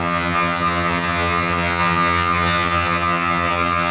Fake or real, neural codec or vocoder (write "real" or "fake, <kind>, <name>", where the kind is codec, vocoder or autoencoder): fake, vocoder, HiFi-GAN